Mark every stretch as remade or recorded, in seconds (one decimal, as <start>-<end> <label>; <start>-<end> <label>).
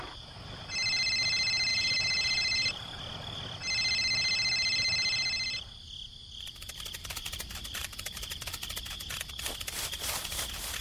0.0-1.7 recorded; 1.7-3.0 remade; 3.0-6.2 recorded; 6.2-8.8 remade; 8.8-10.8 recorded